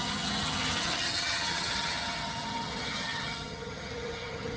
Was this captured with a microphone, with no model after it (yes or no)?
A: no